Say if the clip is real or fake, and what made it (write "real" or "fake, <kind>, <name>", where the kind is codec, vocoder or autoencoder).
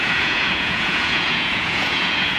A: fake, vocoder, Vocos